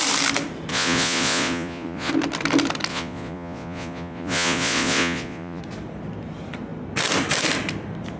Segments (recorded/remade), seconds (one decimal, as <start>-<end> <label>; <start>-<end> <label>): 0.0-0.7 recorded; 0.7-2.1 remade; 2.1-2.9 recorded; 2.9-5.6 remade; 5.6-8.2 recorded